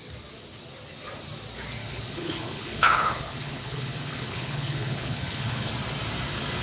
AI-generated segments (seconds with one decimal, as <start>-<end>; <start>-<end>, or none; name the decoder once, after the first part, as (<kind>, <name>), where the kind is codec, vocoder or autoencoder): 1.8-5.7 (codec, HILCodec)